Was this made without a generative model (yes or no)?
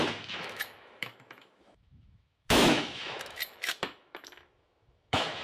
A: no